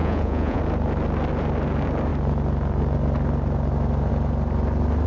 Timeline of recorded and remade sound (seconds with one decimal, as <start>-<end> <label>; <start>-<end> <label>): 0.0-0.6 remade; 0.6-5.1 recorded